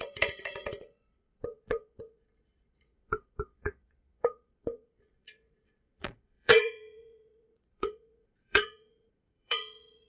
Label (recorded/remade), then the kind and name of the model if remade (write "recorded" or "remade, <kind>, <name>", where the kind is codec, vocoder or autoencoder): remade, vocoder, Vocos